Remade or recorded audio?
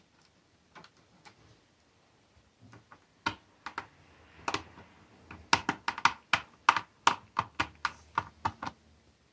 recorded